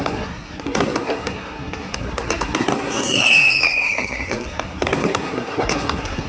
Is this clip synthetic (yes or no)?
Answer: yes